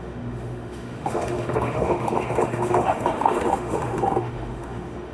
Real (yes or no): no